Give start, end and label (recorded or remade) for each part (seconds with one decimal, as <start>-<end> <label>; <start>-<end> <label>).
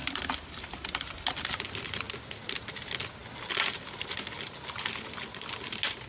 0.0-1.7 remade; 1.7-6.1 recorded